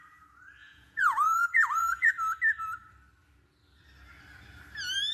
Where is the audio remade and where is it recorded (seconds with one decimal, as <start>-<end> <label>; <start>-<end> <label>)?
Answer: 0.0-0.6 recorded; 0.6-2.1 remade; 2.1-5.1 recorded